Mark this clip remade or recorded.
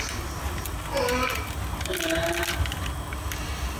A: recorded